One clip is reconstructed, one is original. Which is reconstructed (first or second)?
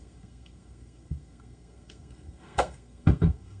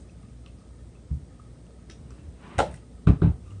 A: first